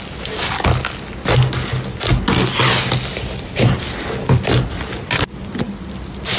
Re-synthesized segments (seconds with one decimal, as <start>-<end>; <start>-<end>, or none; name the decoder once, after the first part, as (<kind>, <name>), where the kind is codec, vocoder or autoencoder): 3.1-3.8 (vocoder, BigVGAN v2)